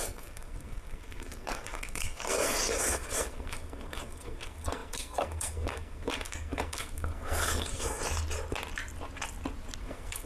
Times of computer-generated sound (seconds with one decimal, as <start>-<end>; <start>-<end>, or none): 0.0-8.0; 9.8-10.3